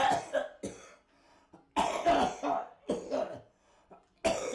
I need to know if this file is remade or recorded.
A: recorded